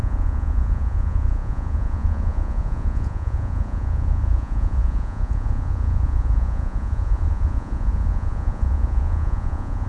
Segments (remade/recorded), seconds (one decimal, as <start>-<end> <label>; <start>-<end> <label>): 0.0-9.9 remade